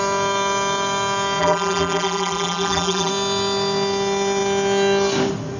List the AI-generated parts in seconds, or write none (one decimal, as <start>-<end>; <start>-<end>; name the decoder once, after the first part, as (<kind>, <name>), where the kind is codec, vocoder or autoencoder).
1.4-3.1 (vocoder, BigVGAN v2)